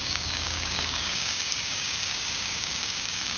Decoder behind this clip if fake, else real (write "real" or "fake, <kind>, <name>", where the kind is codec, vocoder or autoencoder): fake, codec, DAC